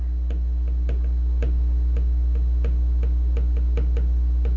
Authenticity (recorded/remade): recorded